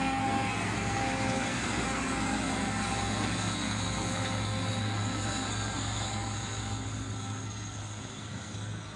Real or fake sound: fake